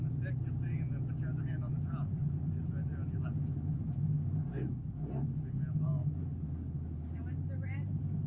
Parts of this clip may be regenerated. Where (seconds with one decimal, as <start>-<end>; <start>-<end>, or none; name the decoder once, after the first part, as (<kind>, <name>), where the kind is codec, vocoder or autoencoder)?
none